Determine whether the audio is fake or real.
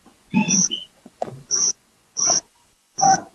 fake